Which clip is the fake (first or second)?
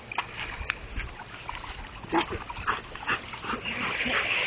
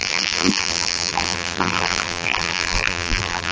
second